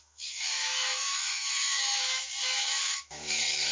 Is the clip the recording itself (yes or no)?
no